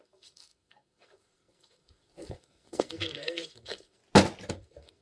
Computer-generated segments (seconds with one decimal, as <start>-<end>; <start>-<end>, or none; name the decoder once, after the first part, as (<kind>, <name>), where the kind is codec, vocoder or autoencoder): 0.0-4.0 (codec, SNAC); 4.5-5.0